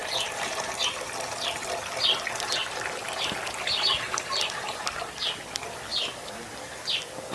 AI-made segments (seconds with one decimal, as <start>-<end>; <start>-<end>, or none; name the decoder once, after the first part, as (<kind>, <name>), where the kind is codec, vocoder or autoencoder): 0.0-0.7 (vocoder, BigVGAN v2); 2.6-4.8

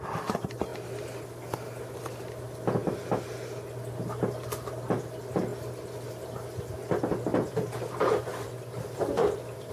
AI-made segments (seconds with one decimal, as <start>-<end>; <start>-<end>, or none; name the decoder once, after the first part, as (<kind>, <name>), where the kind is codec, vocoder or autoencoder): 7.3-9.7 (vocoder, BigVGAN v2)

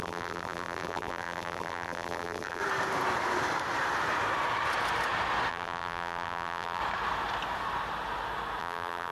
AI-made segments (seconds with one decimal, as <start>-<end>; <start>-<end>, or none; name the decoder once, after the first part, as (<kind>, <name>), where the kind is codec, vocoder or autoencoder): 0.0-2.6 (vocoder, BigVGAN v2); 5.5-6.8; 8.6-9.1

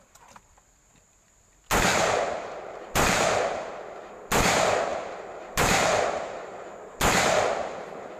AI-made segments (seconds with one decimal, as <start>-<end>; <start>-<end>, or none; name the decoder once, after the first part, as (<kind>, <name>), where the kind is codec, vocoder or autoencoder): 1.9-3.7 (vocoder, BigVGAN v2); 4.9-6.7

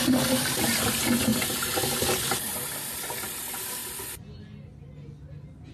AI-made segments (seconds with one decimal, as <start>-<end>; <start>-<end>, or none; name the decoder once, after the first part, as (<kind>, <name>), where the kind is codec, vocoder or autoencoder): 1.3-3.4 (vocoder, BigVGAN v2); 3.8-4.4

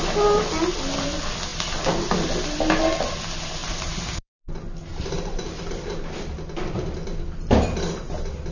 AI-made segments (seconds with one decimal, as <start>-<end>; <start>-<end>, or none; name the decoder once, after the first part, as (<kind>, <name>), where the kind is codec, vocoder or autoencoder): 3.6-4.5 (vocoder, BigVGAN v2); 4.9-6.0

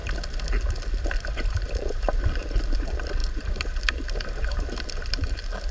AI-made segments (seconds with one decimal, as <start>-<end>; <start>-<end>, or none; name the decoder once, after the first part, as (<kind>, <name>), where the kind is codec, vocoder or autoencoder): 1.3-5.7 (vocoder, BigVGAN v2)

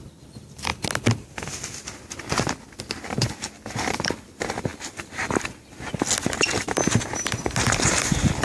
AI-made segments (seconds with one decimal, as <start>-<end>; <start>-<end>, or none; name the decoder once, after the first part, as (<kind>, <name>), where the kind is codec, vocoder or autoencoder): 0.0-0.7 (vocoder, BigVGAN v2); 3.0-4.7; 7.6-8.4